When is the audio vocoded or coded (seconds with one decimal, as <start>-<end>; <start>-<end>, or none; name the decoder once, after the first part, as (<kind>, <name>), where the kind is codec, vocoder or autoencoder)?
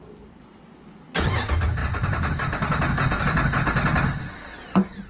none